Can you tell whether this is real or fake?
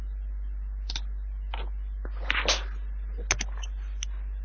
real